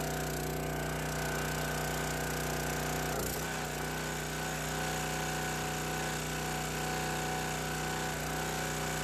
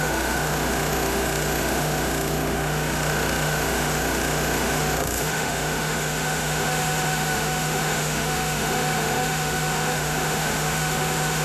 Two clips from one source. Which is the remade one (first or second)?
second